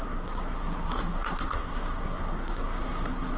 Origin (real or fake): fake